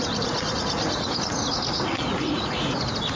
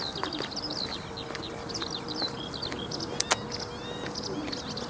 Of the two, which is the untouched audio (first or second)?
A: second